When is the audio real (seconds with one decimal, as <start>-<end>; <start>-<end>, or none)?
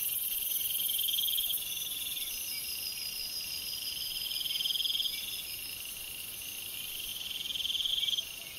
0.0-0.5; 3.2-6.2; 7.1-7.9